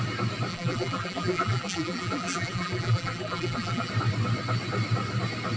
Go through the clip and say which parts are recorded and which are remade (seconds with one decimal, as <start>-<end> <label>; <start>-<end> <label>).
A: 0.0-0.5 recorded; 0.5-3.9 remade; 3.9-5.6 recorded